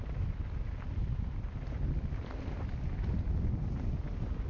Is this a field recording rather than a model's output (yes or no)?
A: yes